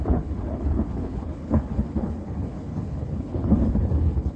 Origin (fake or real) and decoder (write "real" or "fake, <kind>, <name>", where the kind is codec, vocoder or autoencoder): fake, codec, HILCodec